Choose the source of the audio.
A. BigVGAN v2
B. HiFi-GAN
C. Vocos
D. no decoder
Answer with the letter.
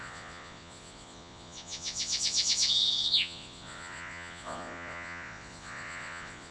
C